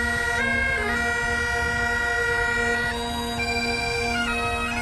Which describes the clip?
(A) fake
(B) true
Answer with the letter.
B